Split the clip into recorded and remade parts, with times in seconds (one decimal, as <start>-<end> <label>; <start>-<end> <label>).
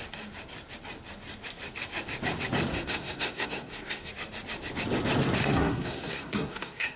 0.0-2.7 recorded; 2.7-4.1 remade; 4.1-5.4 recorded; 5.4-7.0 remade